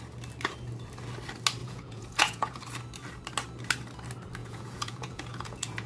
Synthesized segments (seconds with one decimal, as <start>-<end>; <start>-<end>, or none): 1.6-2.6; 4.4-5.9